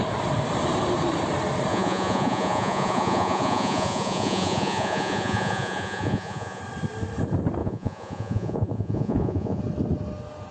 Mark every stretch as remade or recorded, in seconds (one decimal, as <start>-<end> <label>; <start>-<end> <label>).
0.0-1.7 recorded; 1.7-6.6 remade; 6.6-7.6 recorded; 7.6-9.6 remade; 9.6-10.5 recorded